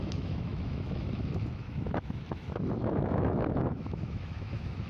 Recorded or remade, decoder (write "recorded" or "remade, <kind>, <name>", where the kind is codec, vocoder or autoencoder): remade, autoencoder, DAC-VAE